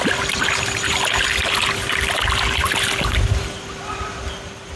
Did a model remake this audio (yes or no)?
no